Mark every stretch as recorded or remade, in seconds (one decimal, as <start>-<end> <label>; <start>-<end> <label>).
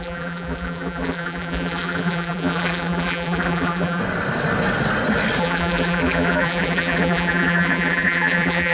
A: 0.0-4.0 remade; 4.0-5.4 recorded; 5.4-8.7 remade